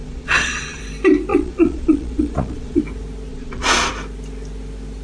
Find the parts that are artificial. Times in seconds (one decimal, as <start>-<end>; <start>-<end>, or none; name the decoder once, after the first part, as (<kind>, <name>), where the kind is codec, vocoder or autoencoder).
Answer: 0.0-0.8 (vocoder, Vocos); 1.3-2.8; 3.3-3.9